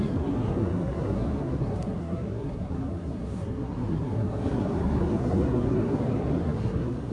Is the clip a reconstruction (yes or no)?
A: yes